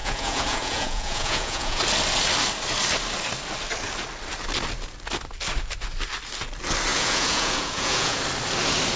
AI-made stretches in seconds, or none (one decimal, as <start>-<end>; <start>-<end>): 0.0-1.8; 6.9-8.2